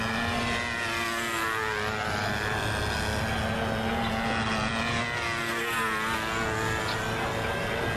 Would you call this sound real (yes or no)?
yes